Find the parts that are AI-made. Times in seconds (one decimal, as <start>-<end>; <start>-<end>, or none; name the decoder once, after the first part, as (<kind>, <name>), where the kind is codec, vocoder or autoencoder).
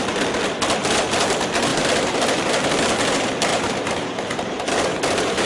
1.7-2.5 (vocoder, BigVGAN v2); 3.5-4.7